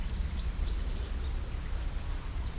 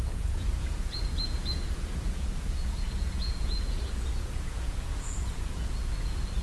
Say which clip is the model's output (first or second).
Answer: second